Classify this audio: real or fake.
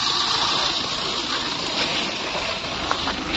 real